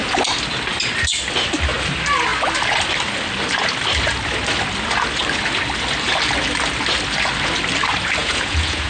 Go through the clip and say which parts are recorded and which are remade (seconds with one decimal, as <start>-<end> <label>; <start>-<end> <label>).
0.0-8.2 recorded; 8.2-8.9 remade